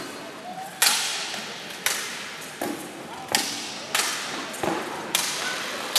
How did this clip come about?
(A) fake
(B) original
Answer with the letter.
B